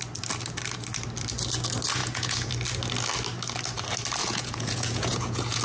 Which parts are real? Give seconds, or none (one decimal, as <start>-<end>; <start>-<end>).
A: 0.0-2.0; 2.5-4.2